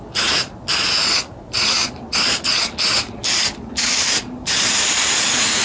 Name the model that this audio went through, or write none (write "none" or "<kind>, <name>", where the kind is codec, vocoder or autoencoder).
none